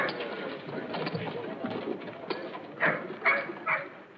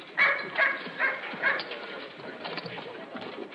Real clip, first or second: first